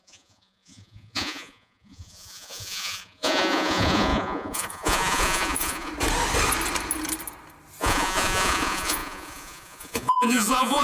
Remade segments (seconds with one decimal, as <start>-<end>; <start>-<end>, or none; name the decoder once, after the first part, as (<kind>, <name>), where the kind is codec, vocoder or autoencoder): 0.0-5.9 (vocoder, Vocos); 7.8-10.8